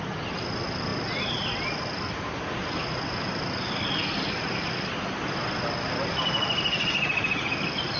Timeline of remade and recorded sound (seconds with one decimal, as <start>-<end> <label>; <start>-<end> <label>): 0.0-8.0 recorded